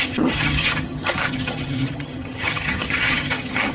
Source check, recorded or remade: remade